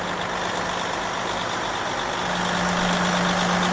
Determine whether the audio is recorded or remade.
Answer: recorded